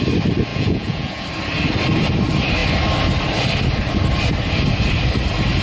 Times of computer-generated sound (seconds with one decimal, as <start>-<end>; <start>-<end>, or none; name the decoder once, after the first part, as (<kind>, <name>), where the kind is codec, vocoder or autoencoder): 0.5-1.2 (vocoder, Vocos)